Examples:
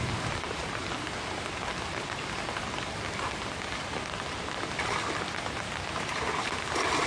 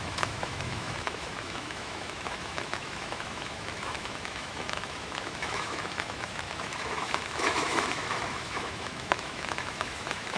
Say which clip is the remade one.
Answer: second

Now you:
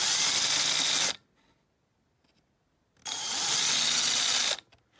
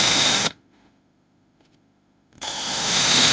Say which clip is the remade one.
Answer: second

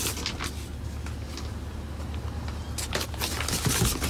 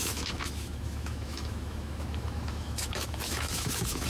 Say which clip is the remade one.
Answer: second